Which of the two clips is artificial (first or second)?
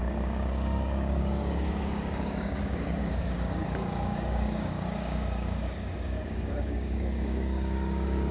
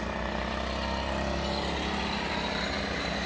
first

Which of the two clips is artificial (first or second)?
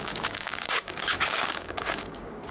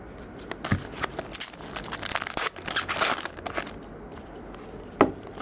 first